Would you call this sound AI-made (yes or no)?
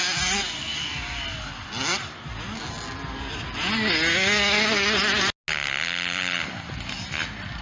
no